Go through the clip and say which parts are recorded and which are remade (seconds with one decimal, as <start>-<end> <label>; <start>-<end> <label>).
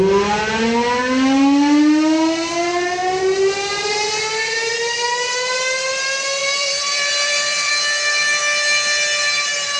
0.0-6.4 recorded; 6.4-7.7 remade; 7.7-9.8 recorded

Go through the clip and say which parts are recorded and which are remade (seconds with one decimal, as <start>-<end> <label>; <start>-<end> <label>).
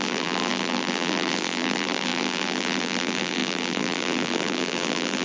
0.0-5.2 remade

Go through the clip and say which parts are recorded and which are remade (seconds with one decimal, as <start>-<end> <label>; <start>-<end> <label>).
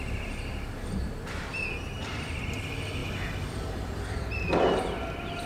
0.0-1.5 recorded; 1.5-2.4 remade; 2.4-3.0 recorded; 3.0-4.8 remade; 4.8-5.5 recorded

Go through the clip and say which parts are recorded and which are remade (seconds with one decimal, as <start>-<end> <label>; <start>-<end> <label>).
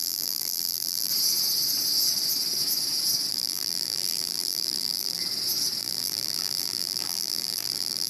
0.0-1.1 remade; 1.1-3.3 recorded; 3.3-5.2 remade; 5.2-5.8 recorded; 5.8-8.1 remade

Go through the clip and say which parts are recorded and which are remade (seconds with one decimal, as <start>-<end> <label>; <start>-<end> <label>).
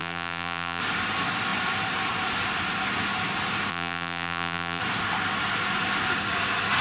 0.0-0.8 remade; 0.8-3.7 recorded; 3.7-4.8 remade; 4.8-6.8 recorded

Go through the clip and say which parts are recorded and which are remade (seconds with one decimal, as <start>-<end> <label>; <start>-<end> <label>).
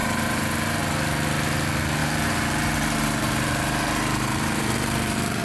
0.0-0.8 remade; 0.8-2.0 recorded; 2.0-5.4 remade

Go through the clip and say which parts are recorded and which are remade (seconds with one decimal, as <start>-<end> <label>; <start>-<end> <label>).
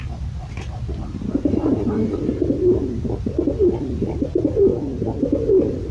0.0-5.9 recorded